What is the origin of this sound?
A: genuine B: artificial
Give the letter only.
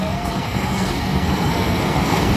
B